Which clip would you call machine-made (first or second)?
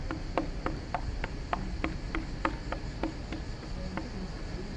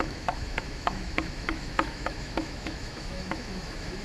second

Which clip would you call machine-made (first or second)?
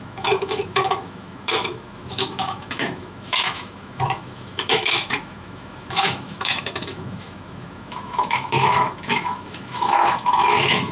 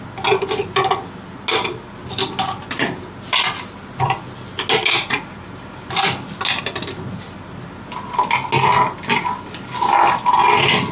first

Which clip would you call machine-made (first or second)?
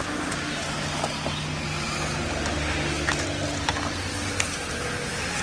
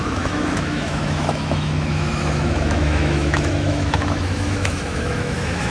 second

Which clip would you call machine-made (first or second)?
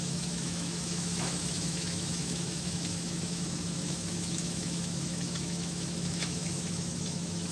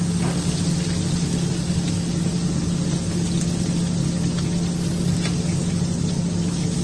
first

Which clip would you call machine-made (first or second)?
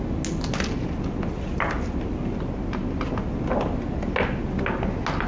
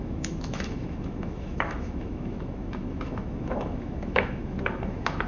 second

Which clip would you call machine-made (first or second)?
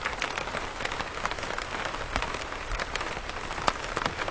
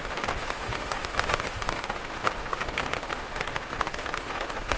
second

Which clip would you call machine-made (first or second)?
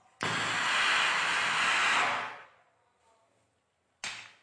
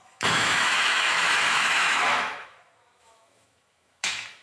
second